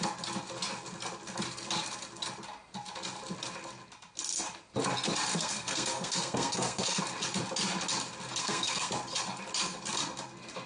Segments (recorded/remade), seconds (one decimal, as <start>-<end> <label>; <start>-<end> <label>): 0.0-5.3 recorded; 5.3-7.0 remade; 7.0-8.4 recorded; 8.4-8.9 remade; 8.9-10.7 recorded